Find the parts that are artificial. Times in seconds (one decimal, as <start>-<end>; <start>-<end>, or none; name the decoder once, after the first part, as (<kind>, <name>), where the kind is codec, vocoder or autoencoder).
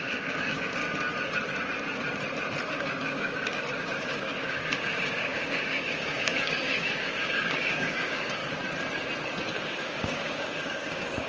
0.0-0.8 (codec, DAC); 2.7-8.4; 9.6-11.3